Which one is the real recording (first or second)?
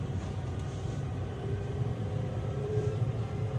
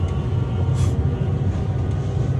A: second